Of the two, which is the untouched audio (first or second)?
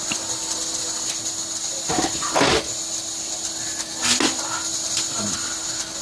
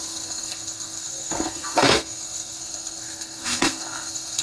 first